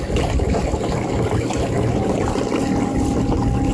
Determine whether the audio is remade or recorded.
recorded